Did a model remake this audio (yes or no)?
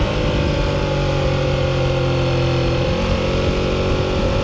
no